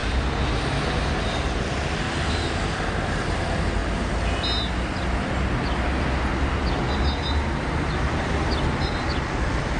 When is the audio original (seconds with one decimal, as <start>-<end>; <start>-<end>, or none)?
0.0-9.8